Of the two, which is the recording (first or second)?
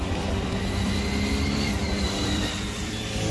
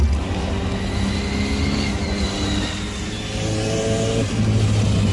second